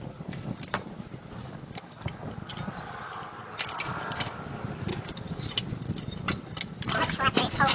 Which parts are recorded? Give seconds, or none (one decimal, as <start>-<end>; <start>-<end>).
0.0-1.4; 2.2-4.9; 5.4-7.7